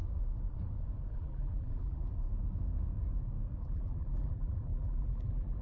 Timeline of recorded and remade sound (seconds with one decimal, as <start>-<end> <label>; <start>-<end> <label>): 0.0-1.1 recorded; 1.1-2.0 remade; 2.0-3.6 recorded; 3.6-5.6 remade